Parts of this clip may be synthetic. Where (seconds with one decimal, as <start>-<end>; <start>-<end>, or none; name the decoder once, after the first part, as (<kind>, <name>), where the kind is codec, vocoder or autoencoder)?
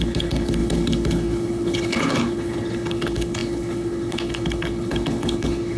0.0-5.8 (codec, HILCodec)